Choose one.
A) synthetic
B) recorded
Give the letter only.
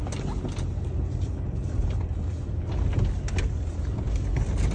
B